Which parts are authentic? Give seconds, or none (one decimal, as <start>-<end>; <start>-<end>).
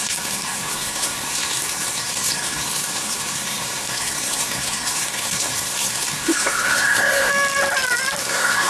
7.3-8.2